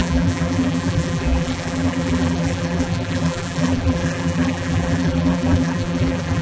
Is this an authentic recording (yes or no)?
no